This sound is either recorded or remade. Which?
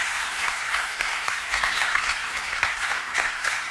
remade